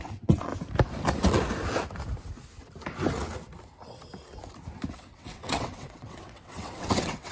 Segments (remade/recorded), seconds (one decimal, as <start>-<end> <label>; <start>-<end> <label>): 0.0-0.5 remade; 0.5-4.9 recorded; 4.9-7.3 remade